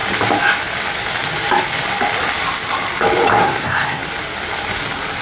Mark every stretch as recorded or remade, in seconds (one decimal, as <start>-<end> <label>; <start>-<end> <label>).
0.0-3.4 recorded; 3.4-4.0 remade; 4.0-5.2 recorded